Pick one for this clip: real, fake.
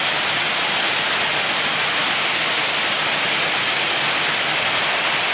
real